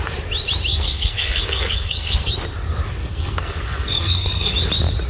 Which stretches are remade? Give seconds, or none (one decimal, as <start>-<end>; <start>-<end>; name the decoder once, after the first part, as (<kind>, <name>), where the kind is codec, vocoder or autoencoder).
0.7-2.3 (codec, SNAC); 3.0-4.5